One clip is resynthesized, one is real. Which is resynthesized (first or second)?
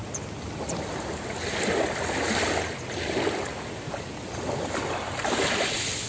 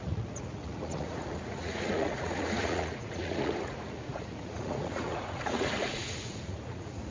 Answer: second